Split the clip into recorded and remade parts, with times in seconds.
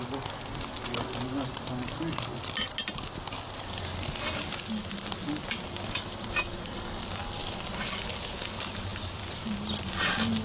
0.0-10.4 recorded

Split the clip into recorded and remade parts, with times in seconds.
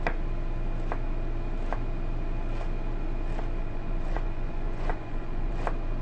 0.0-3.6 recorded; 3.6-5.5 remade; 5.5-6.0 recorded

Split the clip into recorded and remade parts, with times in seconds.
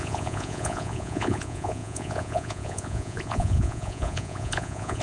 0.0-5.0 remade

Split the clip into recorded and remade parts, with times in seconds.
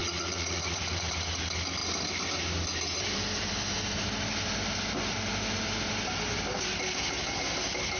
0.0-1.1 remade; 1.1-8.0 recorded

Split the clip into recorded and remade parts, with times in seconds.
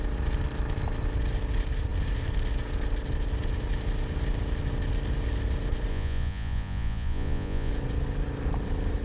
0.0-5.9 recorded; 5.9-7.7 remade; 7.7-9.0 recorded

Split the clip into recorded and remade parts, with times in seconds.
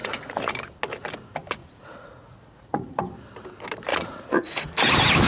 0.0-0.5 remade; 0.5-1.6 recorded; 1.6-3.0 remade; 3.0-3.9 recorded; 3.9-4.7 remade; 4.7-5.3 recorded